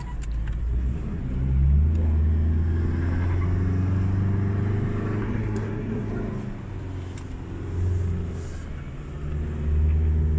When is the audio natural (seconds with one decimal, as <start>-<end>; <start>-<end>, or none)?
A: 0.0-0.6; 1.2-5.2; 6.1-10.4

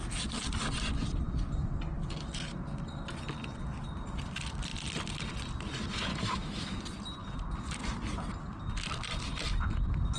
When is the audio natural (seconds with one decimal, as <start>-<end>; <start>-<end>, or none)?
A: 0.0-6.1; 6.8-10.2

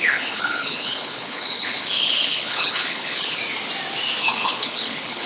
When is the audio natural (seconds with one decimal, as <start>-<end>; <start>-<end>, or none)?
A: 3.4-4.2

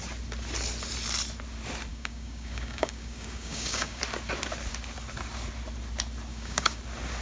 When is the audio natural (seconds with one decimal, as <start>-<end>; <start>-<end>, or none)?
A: 0.0-1.9; 4.0-6.3; 6.8-7.2